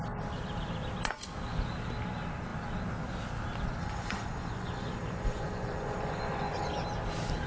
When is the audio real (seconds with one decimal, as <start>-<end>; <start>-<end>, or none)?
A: 0.0-3.8; 6.7-7.5